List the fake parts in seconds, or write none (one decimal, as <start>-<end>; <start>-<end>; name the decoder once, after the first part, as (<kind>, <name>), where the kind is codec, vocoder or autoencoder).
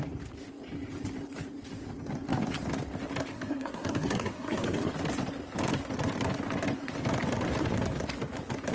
3.3-4.9 (codec, SNAC)